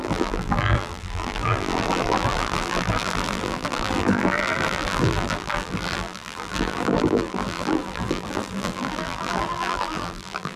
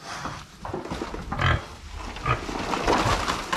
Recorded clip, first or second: second